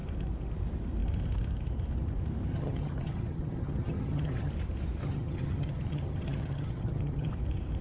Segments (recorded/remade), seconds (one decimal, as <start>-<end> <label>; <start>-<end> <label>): 0.0-2.5 recorded; 2.5-4.5 remade; 4.5-5.0 recorded; 5.0-7.3 remade; 7.3-7.8 recorded